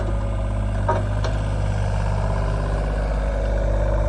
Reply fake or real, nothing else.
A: real